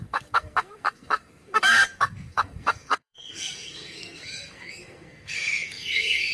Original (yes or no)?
no